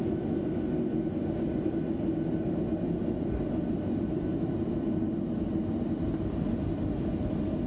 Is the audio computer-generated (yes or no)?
no